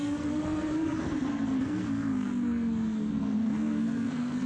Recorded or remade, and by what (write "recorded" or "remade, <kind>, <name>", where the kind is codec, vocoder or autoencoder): remade, codec, SNAC